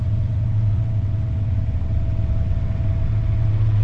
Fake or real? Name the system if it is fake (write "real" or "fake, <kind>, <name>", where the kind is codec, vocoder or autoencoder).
fake, vocoder, WaveNeXt